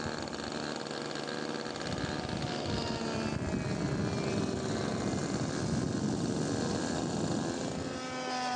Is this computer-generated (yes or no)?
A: no